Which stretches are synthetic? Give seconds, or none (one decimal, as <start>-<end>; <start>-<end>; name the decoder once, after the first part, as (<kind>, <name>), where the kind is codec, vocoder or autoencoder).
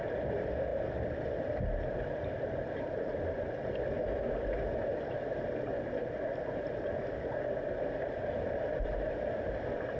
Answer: none